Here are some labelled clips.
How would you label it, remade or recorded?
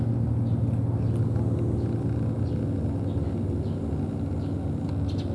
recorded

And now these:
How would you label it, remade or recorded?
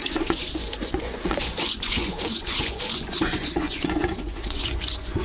remade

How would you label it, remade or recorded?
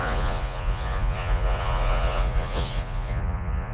remade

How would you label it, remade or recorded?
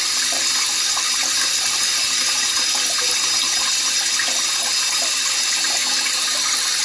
recorded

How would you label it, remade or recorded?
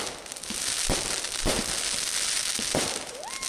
recorded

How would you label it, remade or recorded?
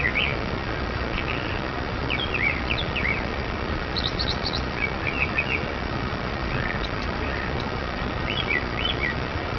remade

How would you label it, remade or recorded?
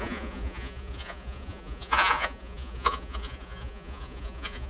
remade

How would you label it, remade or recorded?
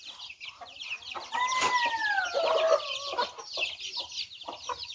recorded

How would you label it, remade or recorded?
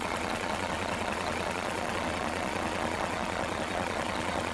remade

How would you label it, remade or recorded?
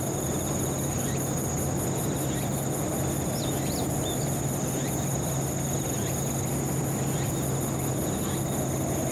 recorded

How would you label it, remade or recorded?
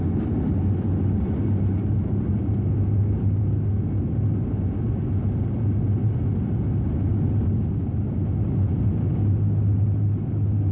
recorded